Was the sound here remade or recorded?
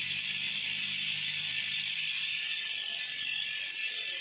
recorded